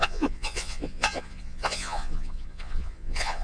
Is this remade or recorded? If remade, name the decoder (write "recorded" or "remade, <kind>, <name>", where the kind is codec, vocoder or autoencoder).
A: remade, vocoder, Vocos